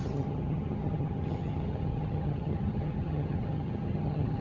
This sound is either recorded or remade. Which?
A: remade